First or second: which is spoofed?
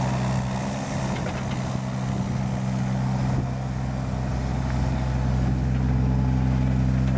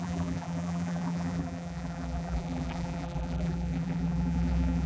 second